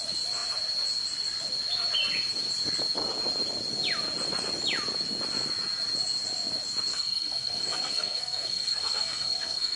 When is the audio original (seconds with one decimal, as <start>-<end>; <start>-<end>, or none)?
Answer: 0.0-6.9